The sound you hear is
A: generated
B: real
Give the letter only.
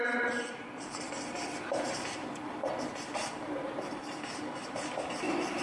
A